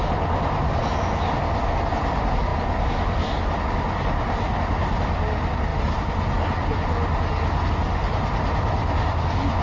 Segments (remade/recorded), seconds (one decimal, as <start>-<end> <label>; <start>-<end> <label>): 0.0-9.6 recorded